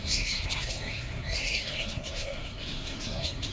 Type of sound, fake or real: fake